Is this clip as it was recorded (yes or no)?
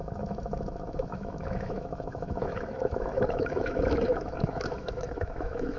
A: no